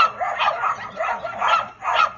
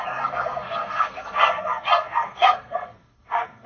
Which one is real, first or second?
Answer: first